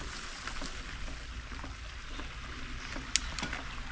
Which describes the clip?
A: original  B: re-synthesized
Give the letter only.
A